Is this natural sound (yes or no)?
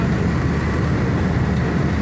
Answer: yes